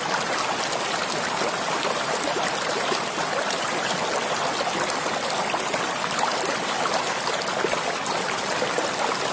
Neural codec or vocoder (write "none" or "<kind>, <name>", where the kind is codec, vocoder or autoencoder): none